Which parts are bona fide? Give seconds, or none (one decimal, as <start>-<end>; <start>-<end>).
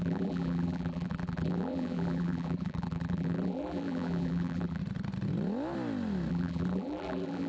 4.8-6.3